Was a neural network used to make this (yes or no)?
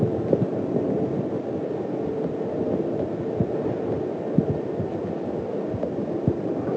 no